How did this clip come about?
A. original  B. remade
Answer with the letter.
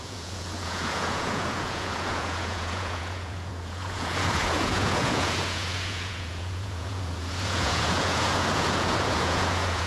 B